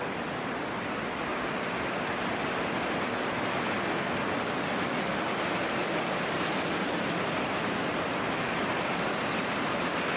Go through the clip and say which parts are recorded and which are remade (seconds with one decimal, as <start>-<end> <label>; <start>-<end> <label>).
0.0-10.2 recorded